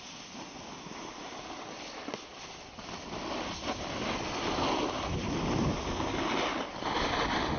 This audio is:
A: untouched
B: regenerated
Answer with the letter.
A